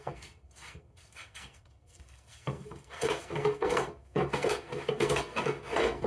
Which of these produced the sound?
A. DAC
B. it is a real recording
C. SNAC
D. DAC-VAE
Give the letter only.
C